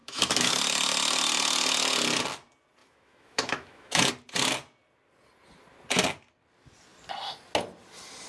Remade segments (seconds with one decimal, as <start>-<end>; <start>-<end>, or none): 0.0-0.6; 2.8-4.1